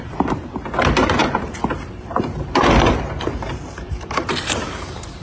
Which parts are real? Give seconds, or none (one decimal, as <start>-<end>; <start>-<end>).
none